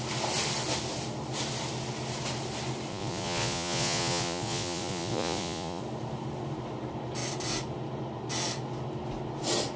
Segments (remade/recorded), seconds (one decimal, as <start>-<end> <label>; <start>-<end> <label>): 0.0-2.9 recorded; 2.9-5.8 remade; 5.8-9.8 recorded